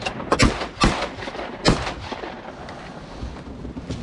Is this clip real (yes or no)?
yes